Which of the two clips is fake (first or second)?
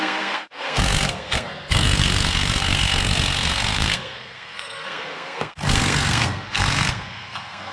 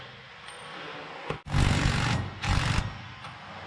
first